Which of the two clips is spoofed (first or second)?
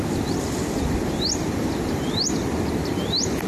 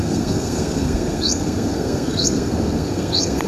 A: second